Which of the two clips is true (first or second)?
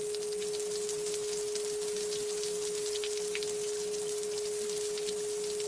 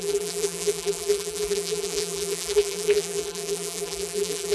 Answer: first